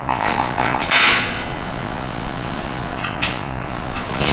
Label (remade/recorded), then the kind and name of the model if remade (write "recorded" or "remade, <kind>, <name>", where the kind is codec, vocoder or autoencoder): remade, vocoder, Vocos